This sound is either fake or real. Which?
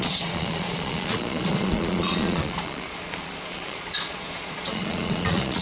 fake